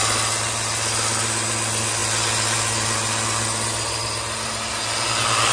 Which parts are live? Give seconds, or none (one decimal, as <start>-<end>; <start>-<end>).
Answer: 0.0-5.5

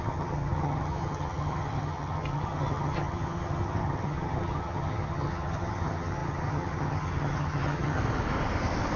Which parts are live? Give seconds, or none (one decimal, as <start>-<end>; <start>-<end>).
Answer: 8.0-9.0

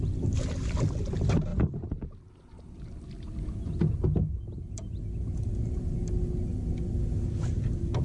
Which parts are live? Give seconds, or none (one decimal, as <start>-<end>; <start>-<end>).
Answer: 0.0-8.0